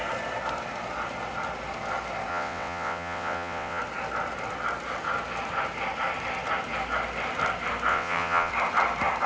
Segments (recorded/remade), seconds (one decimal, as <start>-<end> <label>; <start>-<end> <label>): 0.0-2.3 recorded; 2.3-3.8 remade; 3.8-7.9 recorded; 7.9-8.5 remade; 8.5-9.3 recorded